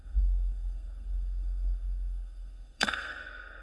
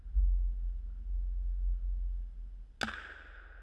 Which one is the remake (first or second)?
first